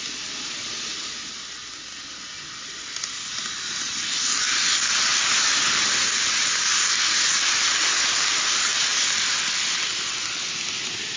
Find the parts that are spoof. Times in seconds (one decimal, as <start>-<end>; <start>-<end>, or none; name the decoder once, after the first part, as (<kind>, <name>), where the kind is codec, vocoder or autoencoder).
5.1-5.8 (vocoder, BigVGAN v2); 6.7-7.3; 8.9-10.1